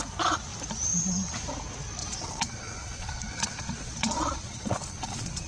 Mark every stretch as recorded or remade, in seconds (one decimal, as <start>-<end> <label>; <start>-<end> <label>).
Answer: 0.0-2.0 recorded; 2.0-5.5 remade